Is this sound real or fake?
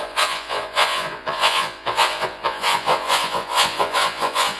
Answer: fake